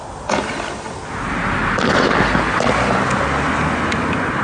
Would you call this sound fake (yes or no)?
no